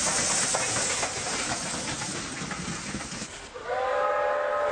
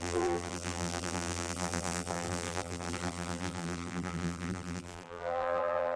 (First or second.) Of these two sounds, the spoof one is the second